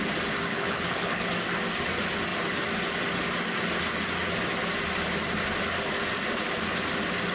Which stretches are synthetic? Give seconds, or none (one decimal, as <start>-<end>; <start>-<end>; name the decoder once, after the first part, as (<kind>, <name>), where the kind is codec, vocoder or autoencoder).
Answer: 0.5-1.3 (codec, HILCodec)